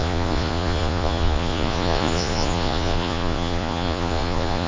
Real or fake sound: fake